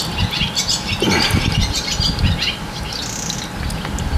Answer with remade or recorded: recorded